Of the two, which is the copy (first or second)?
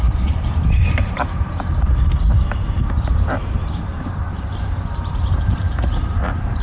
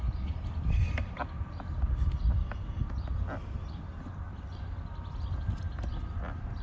first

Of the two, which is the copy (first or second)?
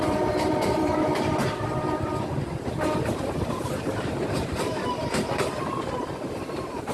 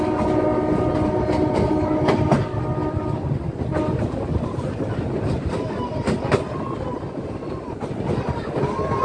first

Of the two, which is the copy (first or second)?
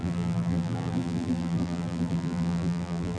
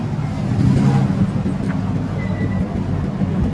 first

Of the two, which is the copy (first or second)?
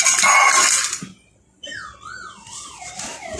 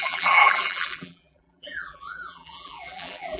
second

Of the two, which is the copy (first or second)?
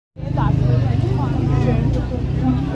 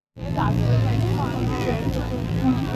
second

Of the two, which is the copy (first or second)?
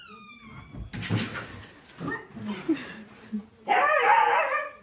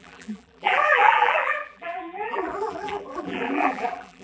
second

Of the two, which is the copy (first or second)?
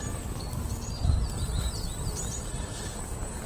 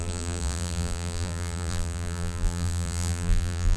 second